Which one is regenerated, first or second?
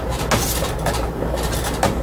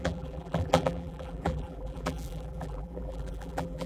second